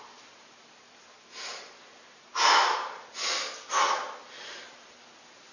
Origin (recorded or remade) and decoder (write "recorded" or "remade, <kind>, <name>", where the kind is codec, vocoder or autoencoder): recorded